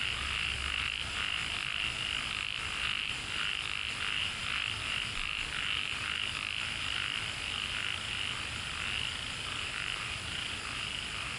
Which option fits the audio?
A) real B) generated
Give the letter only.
A